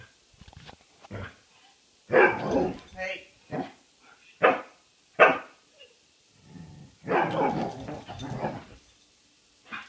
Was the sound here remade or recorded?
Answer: recorded